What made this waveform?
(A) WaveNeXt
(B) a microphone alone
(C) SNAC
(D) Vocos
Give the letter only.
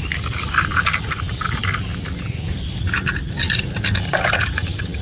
B